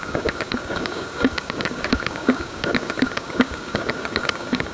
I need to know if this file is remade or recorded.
remade